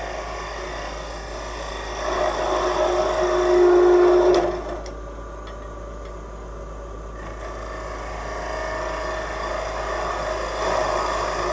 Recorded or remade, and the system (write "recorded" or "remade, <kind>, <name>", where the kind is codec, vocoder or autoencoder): recorded